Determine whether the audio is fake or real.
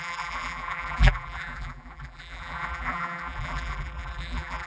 fake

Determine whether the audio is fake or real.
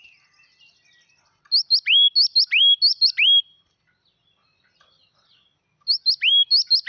real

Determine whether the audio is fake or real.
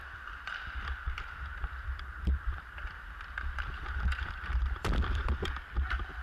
fake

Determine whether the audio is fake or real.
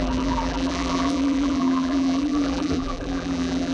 fake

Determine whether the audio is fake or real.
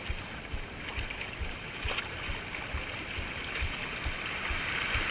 real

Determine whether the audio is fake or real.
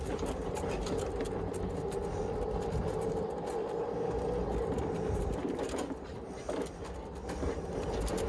real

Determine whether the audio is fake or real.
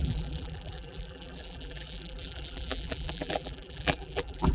fake